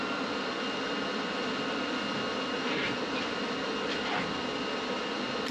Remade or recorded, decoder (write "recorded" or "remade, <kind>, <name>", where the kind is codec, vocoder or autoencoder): recorded